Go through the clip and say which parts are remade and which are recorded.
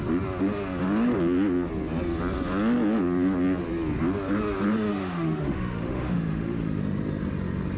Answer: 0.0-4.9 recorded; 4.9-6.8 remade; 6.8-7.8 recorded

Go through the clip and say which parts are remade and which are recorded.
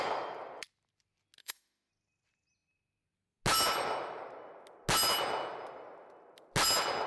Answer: 0.0-1.4 recorded; 1.4-1.9 remade; 1.9-7.1 recorded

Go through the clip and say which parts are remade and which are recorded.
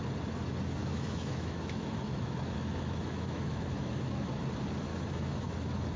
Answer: 0.0-0.8 recorded; 0.8-4.4 remade; 4.4-4.9 recorded; 4.9-5.5 remade; 5.5-6.0 recorded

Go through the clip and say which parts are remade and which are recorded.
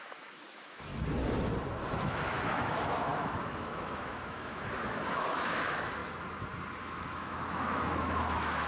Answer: 0.0-0.9 remade; 0.9-2.0 recorded; 2.0-6.0 remade; 6.0-6.8 recorded; 6.8-8.7 remade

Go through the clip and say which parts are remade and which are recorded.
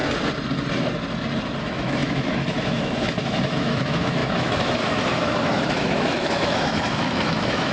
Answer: 0.0-1.6 recorded; 1.6-7.7 remade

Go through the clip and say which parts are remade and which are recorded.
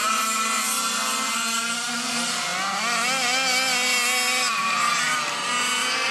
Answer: 0.0-6.1 recorded